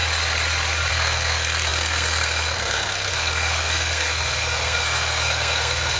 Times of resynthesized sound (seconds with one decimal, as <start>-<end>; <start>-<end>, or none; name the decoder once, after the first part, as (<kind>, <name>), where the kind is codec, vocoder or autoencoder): 0.9-6.0 (codec, SNAC)